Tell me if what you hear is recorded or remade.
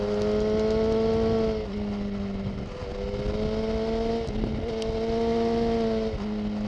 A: recorded